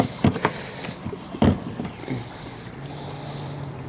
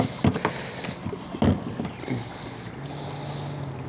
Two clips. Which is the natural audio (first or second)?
second